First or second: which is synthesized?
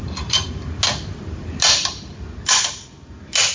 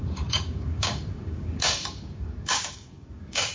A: second